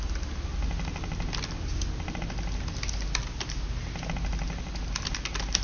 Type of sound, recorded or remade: recorded